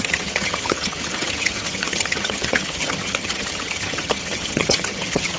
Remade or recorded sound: remade